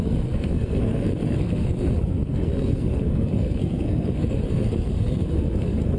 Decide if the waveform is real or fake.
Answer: fake